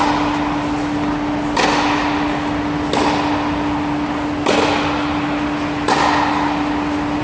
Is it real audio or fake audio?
real